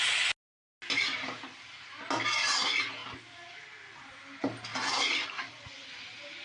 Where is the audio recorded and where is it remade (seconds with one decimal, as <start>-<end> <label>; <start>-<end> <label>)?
0.0-4.7 recorded; 4.7-5.4 remade; 5.4-6.4 recorded